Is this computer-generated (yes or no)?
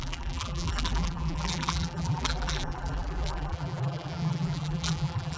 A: yes